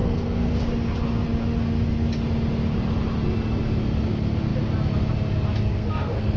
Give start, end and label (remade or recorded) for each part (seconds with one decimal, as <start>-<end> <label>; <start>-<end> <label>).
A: 0.0-0.5 remade; 0.5-5.7 recorded; 5.7-6.4 remade